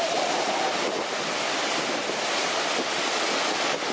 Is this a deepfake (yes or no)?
no